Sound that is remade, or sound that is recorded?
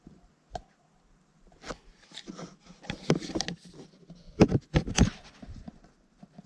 recorded